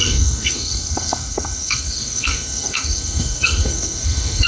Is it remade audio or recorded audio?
remade